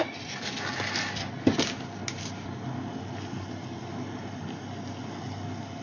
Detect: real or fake real